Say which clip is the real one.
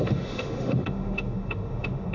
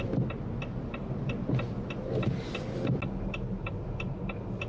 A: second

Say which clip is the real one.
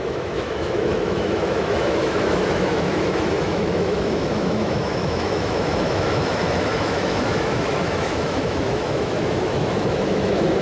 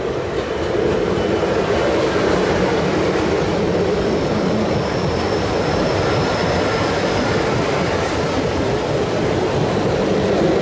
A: second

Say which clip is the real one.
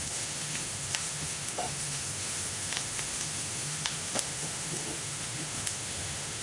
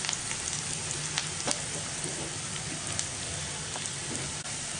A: second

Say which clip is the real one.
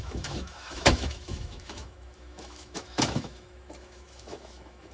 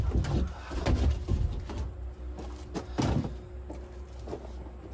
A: second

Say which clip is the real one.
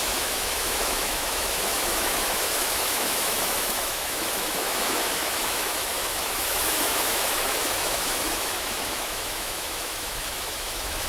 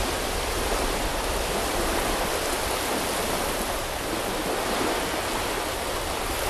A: second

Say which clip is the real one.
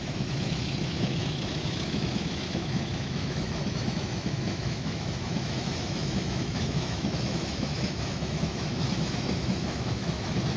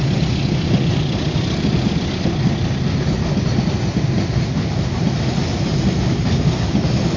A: second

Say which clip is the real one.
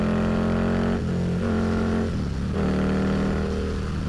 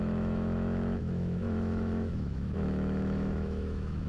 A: first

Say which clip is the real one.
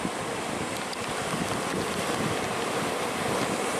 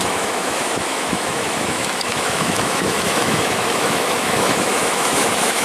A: first